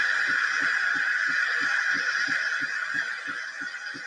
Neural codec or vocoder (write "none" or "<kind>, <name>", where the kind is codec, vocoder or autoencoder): none